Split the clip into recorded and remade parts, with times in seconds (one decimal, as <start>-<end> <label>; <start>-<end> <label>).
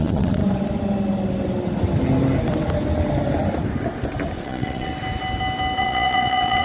0.0-0.4 remade; 0.4-4.4 recorded; 4.4-4.9 remade; 4.9-5.8 recorded; 5.8-6.6 remade